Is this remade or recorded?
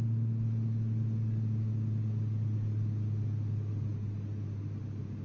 recorded